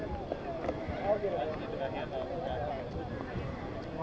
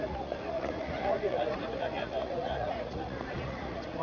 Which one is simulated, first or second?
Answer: second